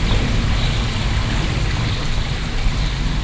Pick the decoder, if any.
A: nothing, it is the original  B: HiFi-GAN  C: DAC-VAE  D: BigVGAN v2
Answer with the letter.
A